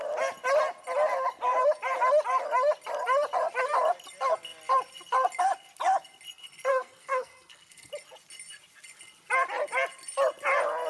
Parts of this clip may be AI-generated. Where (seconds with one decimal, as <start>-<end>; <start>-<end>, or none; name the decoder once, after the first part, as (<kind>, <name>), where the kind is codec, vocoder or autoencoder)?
6.7-7.9 (codec, SNAC)